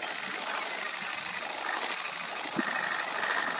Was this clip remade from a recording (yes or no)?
no